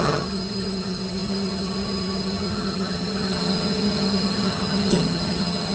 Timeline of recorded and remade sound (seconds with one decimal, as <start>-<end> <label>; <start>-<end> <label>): 0.0-5.7 remade